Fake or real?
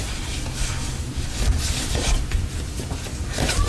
real